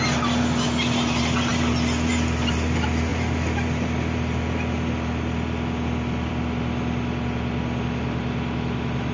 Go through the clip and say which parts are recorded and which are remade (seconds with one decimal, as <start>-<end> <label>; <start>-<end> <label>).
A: 0.0-9.1 recorded